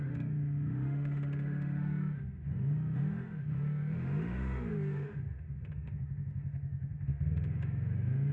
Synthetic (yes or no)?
yes